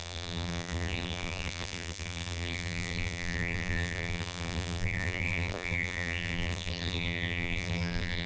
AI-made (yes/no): yes